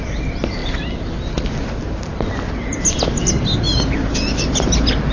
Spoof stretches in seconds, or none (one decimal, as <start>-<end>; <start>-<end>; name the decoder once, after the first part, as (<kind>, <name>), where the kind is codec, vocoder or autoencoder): none